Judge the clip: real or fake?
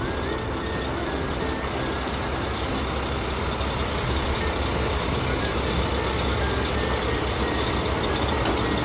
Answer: real